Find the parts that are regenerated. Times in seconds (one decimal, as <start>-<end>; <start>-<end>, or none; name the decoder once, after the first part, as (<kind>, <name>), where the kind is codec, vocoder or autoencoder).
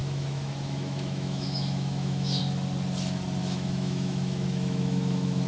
0.0-2.4 (autoencoder, DAC-VAE); 3.4-5.5